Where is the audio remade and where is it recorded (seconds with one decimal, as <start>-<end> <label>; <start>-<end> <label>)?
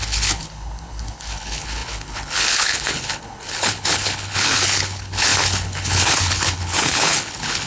0.0-7.7 remade